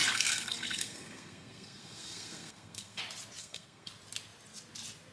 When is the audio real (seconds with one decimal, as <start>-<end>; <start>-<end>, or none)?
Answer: 3.0-3.4; 3.9-5.1

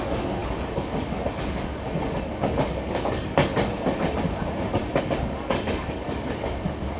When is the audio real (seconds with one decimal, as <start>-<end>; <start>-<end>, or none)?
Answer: 3.5-5.0

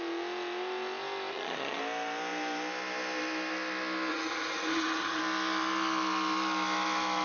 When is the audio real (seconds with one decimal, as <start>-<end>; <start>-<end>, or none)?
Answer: 0.0-1.3; 1.8-4.1; 5.2-7.2

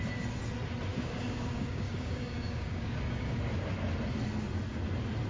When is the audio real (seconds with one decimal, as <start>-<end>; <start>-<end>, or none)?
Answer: 0.0-0.9; 3.4-5.3

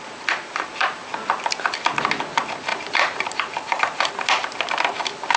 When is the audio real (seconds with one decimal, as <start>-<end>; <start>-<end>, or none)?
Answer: 0.0-2.7; 4.1-5.4

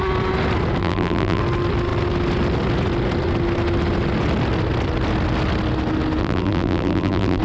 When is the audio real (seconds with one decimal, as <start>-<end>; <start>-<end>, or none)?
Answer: 0.0-0.8; 1.4-6.2

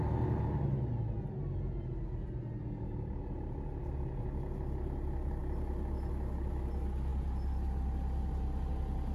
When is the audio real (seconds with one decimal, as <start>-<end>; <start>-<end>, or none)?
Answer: 0.0-9.1